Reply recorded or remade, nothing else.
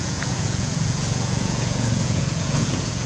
remade